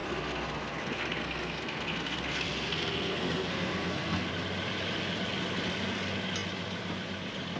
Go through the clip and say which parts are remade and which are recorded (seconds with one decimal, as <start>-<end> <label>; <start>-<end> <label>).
0.0-4.3 remade; 4.3-7.6 recorded